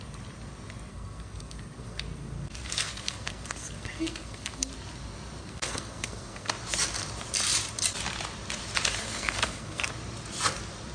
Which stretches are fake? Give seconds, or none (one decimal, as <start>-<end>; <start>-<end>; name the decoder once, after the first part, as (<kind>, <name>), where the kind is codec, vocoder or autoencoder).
0.9-4.7 (codec, SNAC); 5.4-6.5; 9.0-9.9